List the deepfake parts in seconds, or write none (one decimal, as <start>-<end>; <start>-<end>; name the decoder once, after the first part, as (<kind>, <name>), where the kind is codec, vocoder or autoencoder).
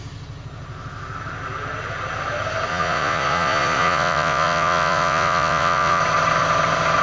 2.7-6.0 (vocoder, Vocos)